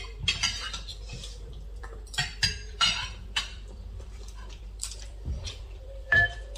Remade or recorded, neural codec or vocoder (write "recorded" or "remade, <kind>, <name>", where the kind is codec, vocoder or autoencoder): remade, vocoder, BigVGAN v2